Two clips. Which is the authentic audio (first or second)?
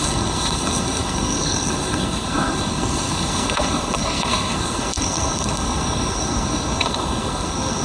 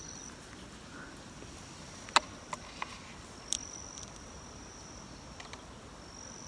second